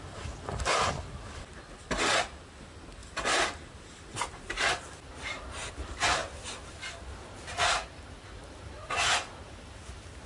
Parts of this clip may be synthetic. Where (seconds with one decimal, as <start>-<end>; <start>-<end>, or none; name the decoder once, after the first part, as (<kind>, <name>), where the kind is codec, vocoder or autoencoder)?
none

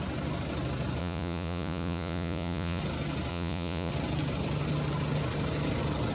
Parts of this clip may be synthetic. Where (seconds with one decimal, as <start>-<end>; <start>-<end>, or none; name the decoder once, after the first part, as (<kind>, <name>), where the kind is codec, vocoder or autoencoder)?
1.0-2.8 (vocoder, Vocos); 3.3-3.9